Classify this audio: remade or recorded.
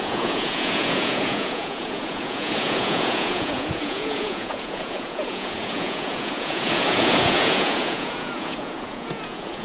remade